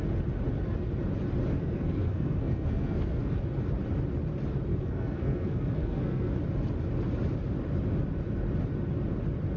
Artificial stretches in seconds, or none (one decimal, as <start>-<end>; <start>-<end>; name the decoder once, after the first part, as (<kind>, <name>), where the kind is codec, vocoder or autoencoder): 1.5-3.4 (codec, SNAC); 4.7-6.3